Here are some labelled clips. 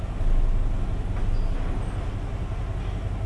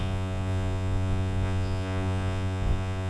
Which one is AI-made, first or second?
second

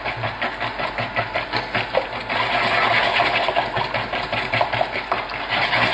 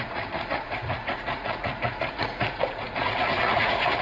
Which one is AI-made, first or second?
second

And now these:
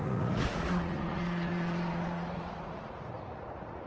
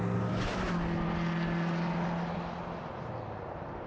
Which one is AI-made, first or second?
first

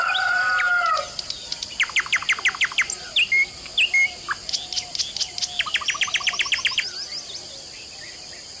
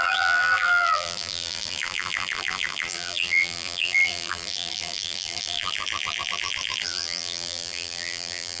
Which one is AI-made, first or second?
second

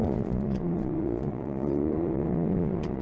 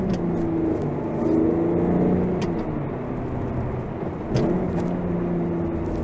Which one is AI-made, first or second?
first